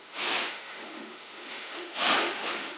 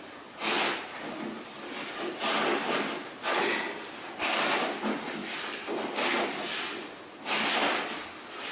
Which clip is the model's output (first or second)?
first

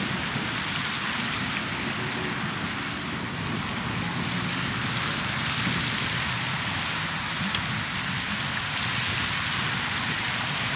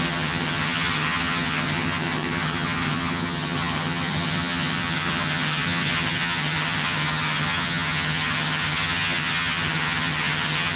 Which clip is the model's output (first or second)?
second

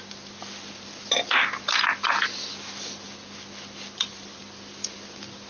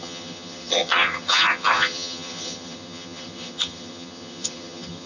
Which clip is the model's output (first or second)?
second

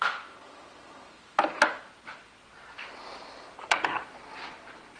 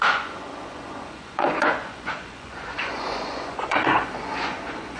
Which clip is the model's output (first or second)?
second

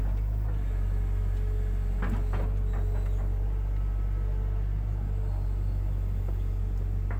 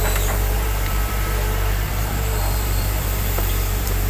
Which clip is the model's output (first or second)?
second